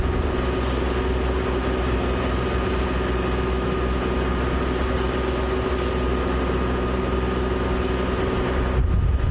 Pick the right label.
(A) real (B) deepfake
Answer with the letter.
A